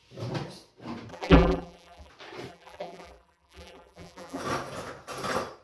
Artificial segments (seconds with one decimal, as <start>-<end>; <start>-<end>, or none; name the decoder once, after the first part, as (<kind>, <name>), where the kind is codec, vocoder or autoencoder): 1.1-2.1 (vocoder, BigVGAN v2); 2.5-4.4